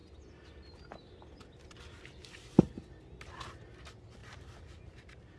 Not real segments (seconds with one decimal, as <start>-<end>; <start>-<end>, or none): 4.2-5.4